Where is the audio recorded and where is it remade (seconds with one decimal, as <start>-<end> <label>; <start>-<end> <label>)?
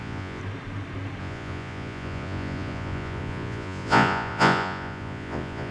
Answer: 0.0-0.4 remade; 0.4-1.2 recorded; 1.2-5.7 remade